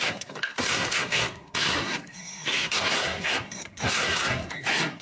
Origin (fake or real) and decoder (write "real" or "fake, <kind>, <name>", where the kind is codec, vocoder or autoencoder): fake, codec, SNAC